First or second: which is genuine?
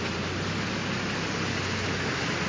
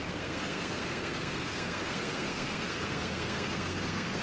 first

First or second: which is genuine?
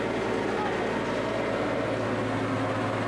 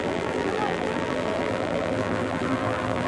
first